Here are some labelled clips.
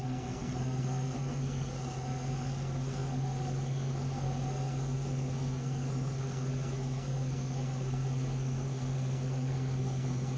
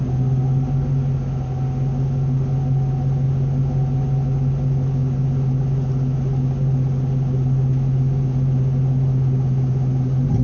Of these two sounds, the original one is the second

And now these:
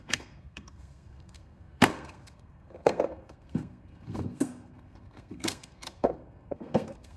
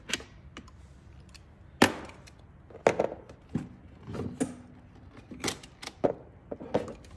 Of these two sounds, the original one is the second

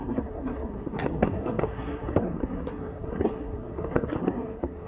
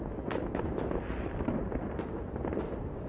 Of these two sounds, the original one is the second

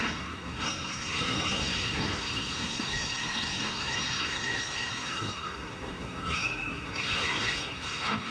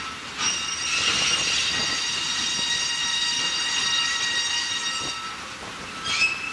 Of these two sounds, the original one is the second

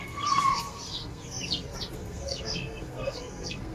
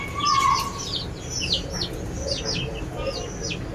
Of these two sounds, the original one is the second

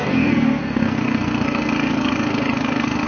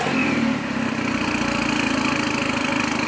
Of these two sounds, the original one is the second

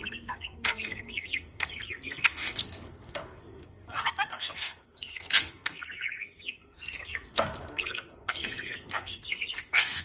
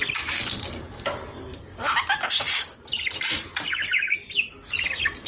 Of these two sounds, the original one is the second